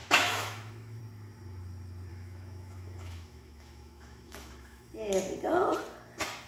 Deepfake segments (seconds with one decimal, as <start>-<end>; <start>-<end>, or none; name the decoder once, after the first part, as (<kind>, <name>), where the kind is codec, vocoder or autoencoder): 0.0-1.0 (autoencoder, DAC-VAE); 2.1-4.9